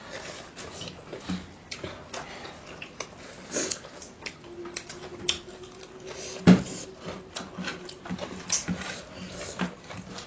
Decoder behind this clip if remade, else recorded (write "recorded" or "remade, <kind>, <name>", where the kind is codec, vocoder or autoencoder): recorded